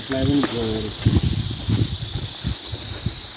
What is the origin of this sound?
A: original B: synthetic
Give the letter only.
A